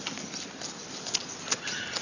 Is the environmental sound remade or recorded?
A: recorded